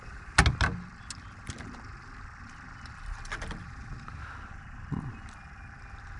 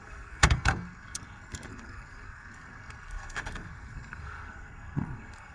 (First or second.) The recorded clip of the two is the first